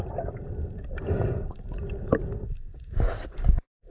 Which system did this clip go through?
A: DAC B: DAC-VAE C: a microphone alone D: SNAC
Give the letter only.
C